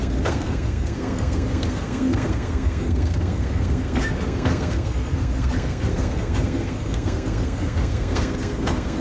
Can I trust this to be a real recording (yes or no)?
no